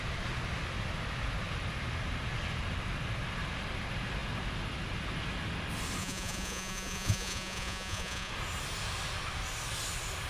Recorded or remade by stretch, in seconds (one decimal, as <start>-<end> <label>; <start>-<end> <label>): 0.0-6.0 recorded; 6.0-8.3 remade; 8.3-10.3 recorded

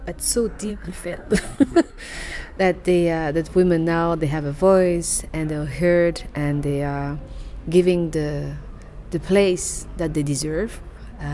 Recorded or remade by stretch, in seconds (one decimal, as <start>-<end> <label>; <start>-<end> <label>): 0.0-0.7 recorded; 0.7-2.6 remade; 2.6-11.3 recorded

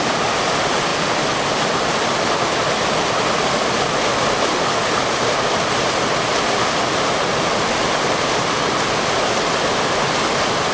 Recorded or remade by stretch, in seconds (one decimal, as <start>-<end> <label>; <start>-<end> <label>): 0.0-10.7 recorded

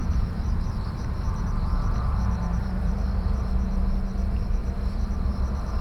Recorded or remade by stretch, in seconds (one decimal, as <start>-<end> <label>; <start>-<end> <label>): 0.0-3.5 remade; 3.5-4.6 recorded; 4.6-5.8 remade

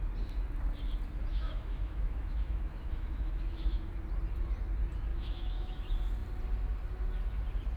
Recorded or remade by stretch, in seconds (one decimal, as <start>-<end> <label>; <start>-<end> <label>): 0.0-1.3 recorded; 1.3-3.9 remade; 3.9-5.1 recorded; 5.1-5.8 remade; 5.8-7.8 recorded